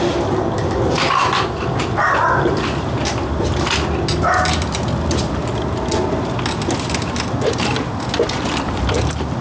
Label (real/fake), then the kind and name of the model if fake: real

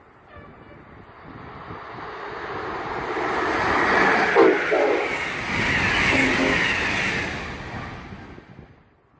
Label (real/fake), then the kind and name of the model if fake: real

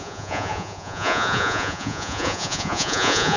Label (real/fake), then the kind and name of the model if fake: fake, vocoder, Vocos